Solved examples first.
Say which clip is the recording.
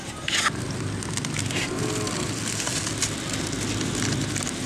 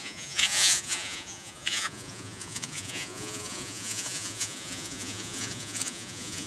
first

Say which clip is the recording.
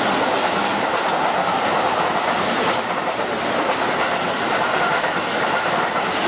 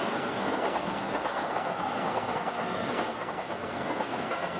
first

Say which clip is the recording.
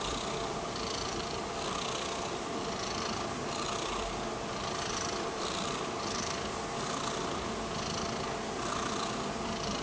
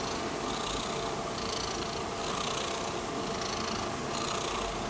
second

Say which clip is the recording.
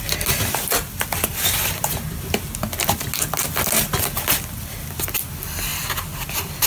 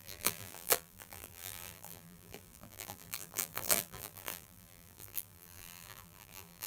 first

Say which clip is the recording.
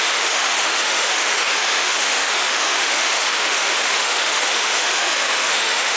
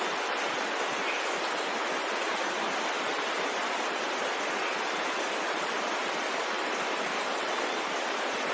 second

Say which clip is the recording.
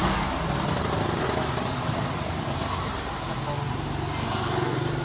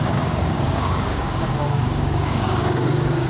first